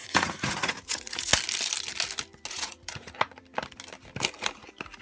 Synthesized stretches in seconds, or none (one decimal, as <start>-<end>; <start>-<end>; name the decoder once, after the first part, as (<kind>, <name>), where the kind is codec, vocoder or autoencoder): 0.0-1.3 (vocoder, Vocos); 2.5-3.4